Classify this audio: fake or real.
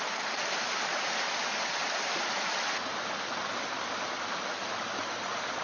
real